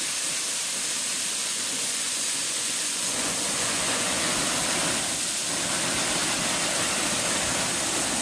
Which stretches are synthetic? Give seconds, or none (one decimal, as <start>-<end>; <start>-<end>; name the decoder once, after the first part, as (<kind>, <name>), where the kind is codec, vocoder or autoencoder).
1.4-4.4 (vocoder, Vocos)